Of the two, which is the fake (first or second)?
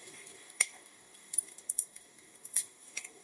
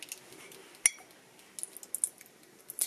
first